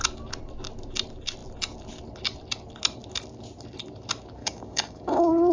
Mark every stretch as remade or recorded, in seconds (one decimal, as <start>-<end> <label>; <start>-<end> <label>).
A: 0.0-4.4 recorded; 4.4-5.5 remade